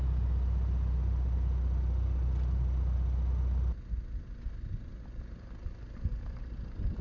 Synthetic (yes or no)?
no